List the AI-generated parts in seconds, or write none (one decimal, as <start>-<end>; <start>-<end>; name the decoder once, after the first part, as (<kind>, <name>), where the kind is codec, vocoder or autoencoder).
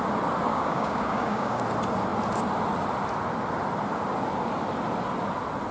0.5-1.6 (codec, DAC)